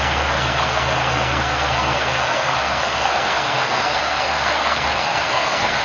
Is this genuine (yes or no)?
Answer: no